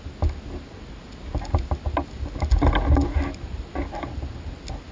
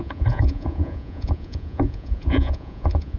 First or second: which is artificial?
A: second